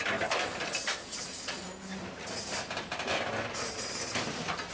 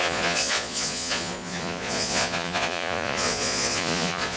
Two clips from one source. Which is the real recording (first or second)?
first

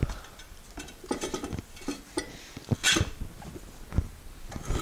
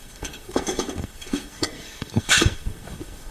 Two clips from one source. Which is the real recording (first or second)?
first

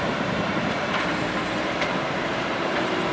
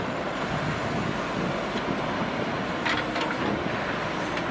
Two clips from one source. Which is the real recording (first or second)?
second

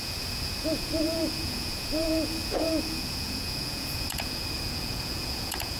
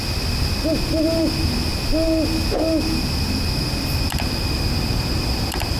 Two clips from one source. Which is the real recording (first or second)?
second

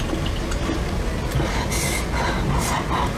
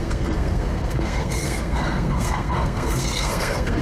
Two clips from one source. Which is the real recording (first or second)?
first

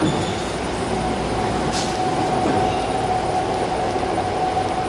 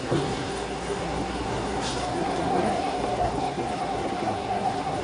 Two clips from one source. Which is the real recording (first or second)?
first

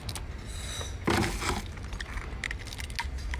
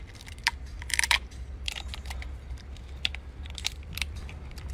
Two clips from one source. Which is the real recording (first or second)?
first